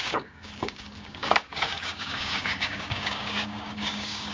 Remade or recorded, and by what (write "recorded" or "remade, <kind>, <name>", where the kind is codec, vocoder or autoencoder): remade, codec, DAC